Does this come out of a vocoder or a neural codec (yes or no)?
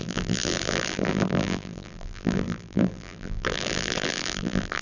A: yes